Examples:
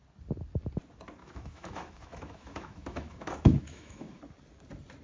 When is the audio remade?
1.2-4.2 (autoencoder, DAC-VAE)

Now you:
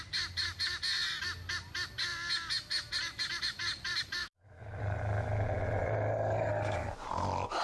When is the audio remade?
4.2-4.8 (autoencoder, DAC-VAE)

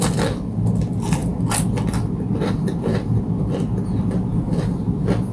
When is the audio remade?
none

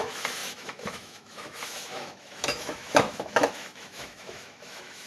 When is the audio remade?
0.0-5.1 (autoencoder, DAC-VAE)

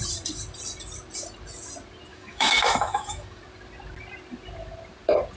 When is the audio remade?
2.1-3.4 (autoencoder, DAC-VAE)

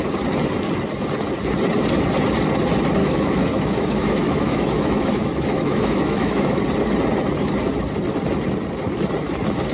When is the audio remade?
3.0-6.6 (autoencoder, DAC-VAE)